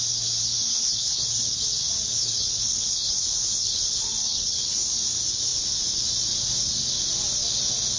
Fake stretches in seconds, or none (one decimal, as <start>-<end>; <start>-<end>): 0.7-1.6; 2.1-4.9